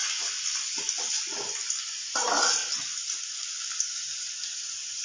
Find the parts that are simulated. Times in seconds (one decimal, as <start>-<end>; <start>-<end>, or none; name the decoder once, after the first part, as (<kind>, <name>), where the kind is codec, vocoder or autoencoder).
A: none